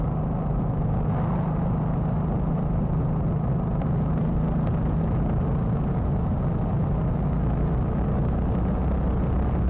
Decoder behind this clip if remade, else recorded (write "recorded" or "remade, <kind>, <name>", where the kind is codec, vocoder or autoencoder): recorded